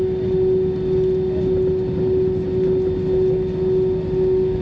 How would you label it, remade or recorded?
recorded